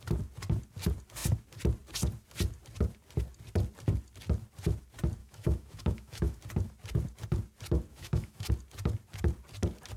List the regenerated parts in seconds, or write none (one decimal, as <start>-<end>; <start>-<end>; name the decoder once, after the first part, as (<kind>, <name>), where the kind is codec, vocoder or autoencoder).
5.2-6.4 (autoencoder, DAC-VAE); 7.9-8.5